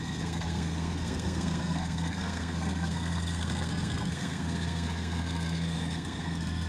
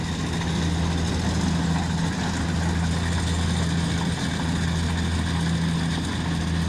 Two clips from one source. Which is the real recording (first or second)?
second